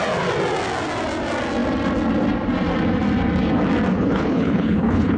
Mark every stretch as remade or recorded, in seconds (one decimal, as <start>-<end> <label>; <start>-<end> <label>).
0.0-3.9 recorded; 3.9-5.2 remade